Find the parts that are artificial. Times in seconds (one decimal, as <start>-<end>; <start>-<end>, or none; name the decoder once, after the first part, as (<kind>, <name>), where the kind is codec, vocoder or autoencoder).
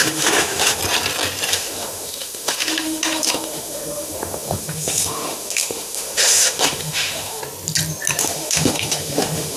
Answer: 0.0-0.8 (autoencoder, DAC-VAE); 1.5-7.4; 8.2-9.6